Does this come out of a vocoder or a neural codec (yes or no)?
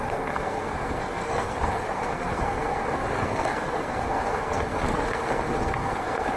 yes